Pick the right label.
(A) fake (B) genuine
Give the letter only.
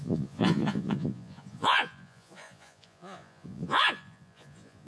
A